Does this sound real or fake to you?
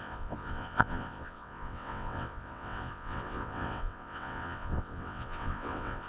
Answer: fake